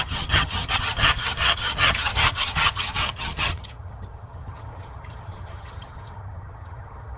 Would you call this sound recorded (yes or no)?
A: no